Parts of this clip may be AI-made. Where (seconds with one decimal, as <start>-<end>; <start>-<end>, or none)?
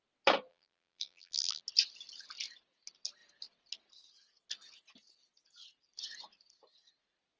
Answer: 0.5-1.6